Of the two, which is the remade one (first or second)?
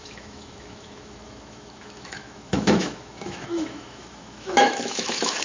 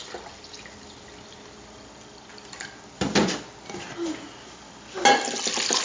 first